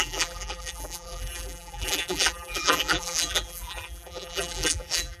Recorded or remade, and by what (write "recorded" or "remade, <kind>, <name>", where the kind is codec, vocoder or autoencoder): remade, vocoder, BigVGAN v2